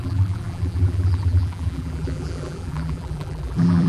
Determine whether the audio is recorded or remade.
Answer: remade